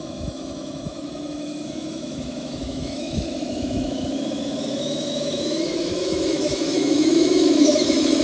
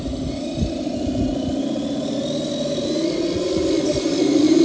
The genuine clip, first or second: second